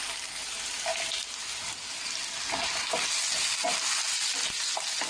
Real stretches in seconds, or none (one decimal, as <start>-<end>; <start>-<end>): 0.0-5.1